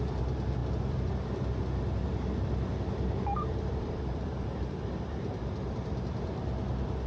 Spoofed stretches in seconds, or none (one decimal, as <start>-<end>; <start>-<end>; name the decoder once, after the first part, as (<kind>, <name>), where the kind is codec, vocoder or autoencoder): 0.6-1.2 (vocoder, BigVGAN v2); 2.7-7.1